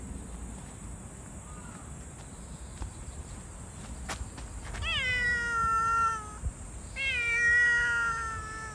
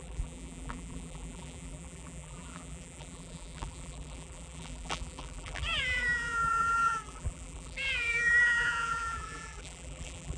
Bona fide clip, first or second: first